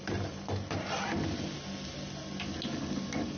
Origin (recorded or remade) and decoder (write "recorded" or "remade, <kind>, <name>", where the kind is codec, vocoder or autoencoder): recorded